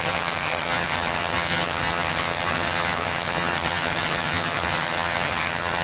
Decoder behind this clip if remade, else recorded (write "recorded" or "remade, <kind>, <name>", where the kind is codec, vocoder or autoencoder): remade, vocoder, HiFi-GAN